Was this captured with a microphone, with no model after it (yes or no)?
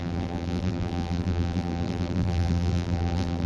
no